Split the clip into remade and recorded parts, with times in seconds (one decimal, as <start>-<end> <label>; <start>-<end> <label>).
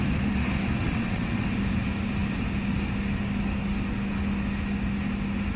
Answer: 0.0-0.8 recorded; 0.8-1.4 remade; 1.4-5.6 recorded